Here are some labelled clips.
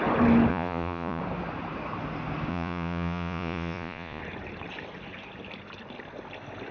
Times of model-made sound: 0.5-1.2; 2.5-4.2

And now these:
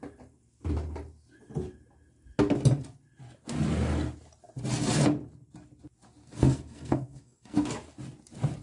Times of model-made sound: 6.2-7.7

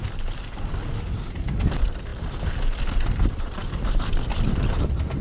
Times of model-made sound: none

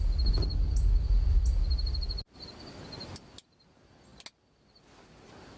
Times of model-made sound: none